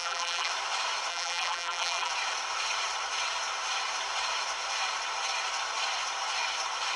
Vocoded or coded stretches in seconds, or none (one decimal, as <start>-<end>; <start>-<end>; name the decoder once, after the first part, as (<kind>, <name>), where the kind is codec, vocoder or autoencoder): 0.0-0.5 (vocoder, BigVGAN v2); 1.1-2.1